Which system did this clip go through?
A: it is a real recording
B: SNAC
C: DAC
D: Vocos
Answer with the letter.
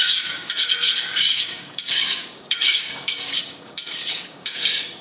C